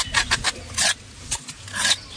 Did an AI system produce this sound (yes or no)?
no